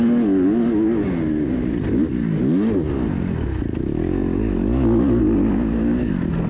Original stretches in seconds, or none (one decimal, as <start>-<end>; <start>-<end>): 0.0-6.5